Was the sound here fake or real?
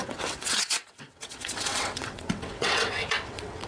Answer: fake